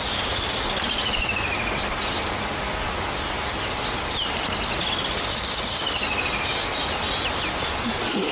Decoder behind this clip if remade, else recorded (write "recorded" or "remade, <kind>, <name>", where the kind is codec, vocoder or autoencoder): recorded